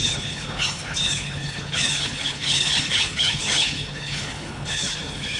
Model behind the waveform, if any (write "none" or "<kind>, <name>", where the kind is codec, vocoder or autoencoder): codec, HILCodec